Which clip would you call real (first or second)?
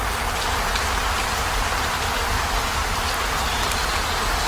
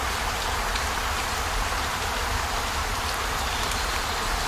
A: first